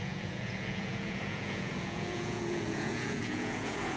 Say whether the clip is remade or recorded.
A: remade